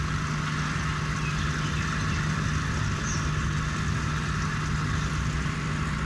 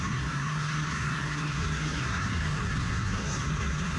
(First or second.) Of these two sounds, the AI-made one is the second